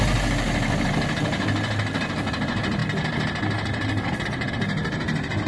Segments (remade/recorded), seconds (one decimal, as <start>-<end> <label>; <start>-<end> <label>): 0.0-5.5 recorded